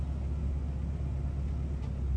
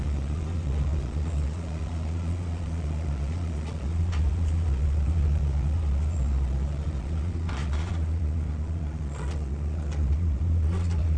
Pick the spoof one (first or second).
second